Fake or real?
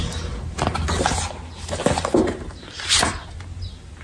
real